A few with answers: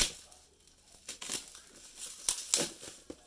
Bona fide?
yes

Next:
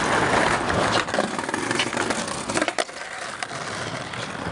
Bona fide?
no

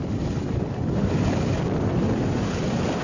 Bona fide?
yes